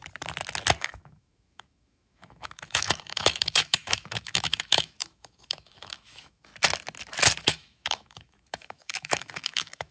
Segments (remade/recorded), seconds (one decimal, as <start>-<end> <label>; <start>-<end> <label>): 0.0-0.8 recorded; 0.8-6.5 remade; 6.5-7.4 recorded; 7.4-9.9 remade